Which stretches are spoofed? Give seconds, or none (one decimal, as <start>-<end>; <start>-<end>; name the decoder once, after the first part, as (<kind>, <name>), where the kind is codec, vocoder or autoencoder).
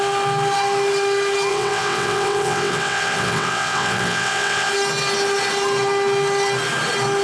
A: 1.5-4.7 (vocoder, WaveNeXt)